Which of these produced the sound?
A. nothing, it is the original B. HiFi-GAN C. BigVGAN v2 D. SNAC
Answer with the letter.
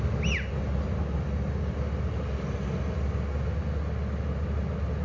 A